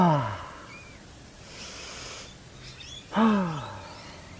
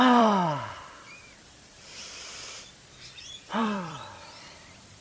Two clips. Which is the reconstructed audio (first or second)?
second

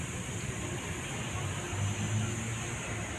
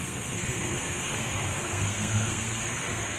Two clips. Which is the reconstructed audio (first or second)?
second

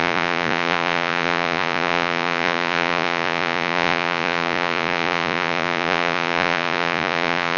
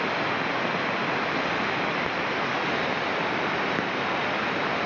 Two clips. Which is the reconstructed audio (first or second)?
first